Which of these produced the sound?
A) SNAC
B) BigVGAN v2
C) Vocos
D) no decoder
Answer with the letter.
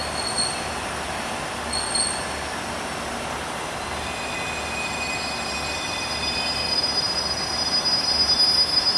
D